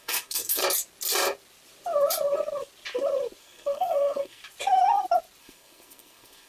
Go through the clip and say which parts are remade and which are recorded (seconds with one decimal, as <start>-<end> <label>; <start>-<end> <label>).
0.0-0.6 remade; 0.6-3.4 recorded; 3.4-4.4 remade; 4.4-5.4 recorded; 5.4-6.5 remade

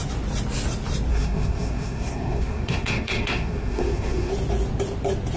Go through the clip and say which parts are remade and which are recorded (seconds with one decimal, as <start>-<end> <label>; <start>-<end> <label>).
0.0-1.1 recorded; 1.1-4.3 remade; 4.3-5.4 recorded

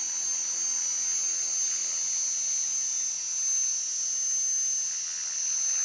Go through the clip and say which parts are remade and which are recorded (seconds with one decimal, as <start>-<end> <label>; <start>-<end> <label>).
0.0-5.8 recorded

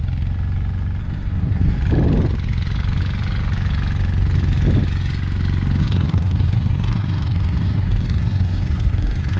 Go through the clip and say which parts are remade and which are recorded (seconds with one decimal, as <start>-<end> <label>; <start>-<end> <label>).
0.0-1.0 recorded; 1.0-1.8 remade; 1.8-5.8 recorded; 5.8-9.4 remade

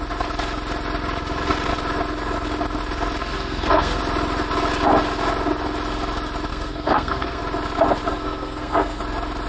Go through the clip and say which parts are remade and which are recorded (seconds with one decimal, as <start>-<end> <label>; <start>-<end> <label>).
0.0-3.2 recorded; 3.2-4.0 remade; 4.0-6.5 recorded; 6.5-7.4 remade; 7.4-8.1 recorded; 8.1-9.0 remade; 9.0-9.5 recorded

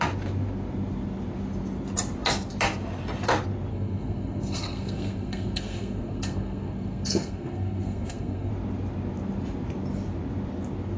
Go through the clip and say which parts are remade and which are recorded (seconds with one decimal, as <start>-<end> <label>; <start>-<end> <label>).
0.0-3.7 recorded; 3.7-8.5 remade; 8.5-11.0 recorded

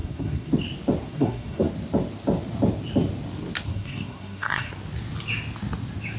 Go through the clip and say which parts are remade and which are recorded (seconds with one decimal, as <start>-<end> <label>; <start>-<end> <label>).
0.0-0.5 remade; 0.5-1.0 recorded; 1.0-1.7 remade; 1.7-3.7 recorded; 3.7-4.7 remade; 4.7-6.2 recorded